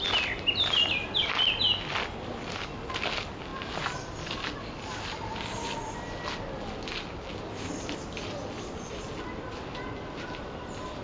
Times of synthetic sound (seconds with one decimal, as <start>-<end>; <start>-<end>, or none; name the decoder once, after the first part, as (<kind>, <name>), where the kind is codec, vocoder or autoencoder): none

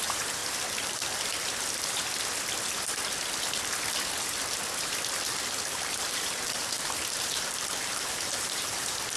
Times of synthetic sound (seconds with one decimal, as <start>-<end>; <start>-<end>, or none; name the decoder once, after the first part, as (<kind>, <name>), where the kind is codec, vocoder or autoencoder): 0.0-0.4 (vocoder, BigVGAN v2); 5.6-9.2